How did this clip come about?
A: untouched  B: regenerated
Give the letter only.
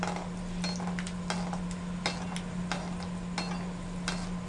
A